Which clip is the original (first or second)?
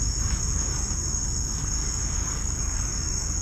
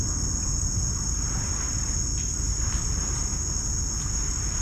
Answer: second